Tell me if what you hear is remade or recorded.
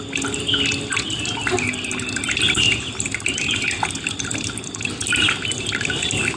recorded